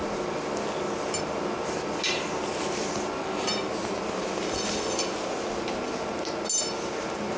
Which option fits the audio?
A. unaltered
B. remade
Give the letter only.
A